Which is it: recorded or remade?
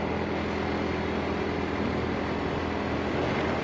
recorded